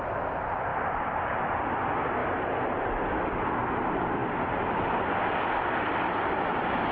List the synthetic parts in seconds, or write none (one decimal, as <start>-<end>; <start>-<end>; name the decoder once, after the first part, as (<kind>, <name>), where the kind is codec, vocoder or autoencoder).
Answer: 0.7-1.3 (vocoder, BigVGAN v2); 2.2-3.4